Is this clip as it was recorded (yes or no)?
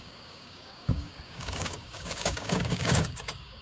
no